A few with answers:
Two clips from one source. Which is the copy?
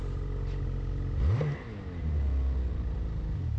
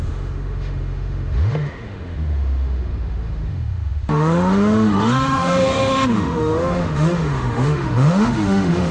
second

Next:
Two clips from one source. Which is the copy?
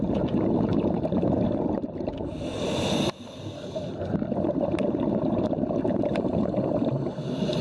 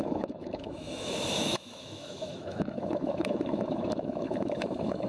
second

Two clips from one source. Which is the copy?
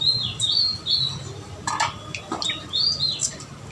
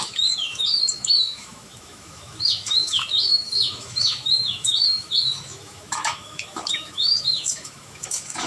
second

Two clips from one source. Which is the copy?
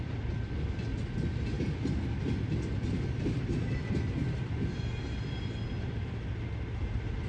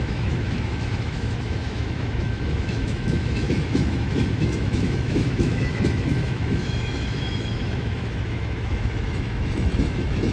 second